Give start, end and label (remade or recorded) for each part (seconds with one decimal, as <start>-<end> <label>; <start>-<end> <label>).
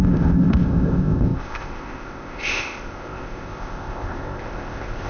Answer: 0.0-5.1 remade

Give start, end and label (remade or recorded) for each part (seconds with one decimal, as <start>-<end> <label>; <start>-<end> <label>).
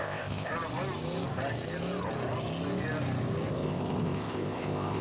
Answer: 0.0-0.5 remade; 0.5-3.5 recorded; 3.5-5.0 remade